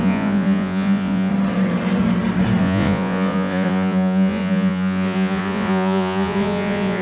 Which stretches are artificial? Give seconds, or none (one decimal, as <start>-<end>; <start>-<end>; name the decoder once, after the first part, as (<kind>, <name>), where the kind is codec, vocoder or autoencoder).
0.0-1.3 (vocoder, Vocos); 2.6-7.0